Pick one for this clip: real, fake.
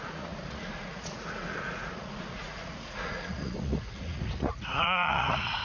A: fake